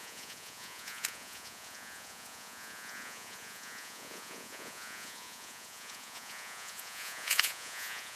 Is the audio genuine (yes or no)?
no